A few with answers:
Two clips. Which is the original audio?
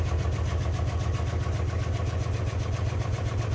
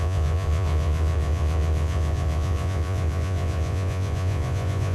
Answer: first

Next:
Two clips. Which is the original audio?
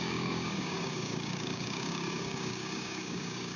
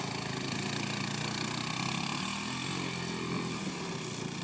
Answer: second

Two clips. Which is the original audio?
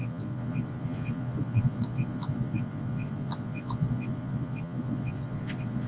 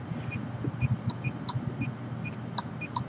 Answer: second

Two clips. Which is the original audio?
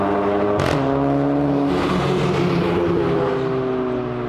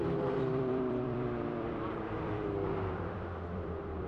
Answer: first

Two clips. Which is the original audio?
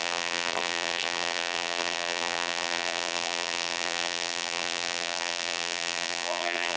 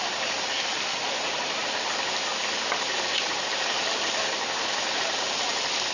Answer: second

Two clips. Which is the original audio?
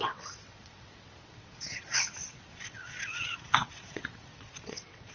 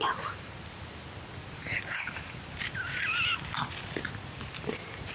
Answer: second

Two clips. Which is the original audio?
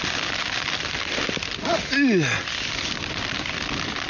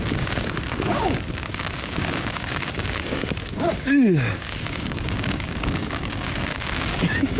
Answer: first